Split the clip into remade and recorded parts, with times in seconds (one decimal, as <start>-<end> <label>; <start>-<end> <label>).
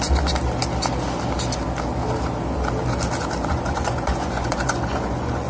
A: 0.0-3.5 recorded; 3.5-5.5 remade